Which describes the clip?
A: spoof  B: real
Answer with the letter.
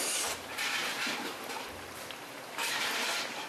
A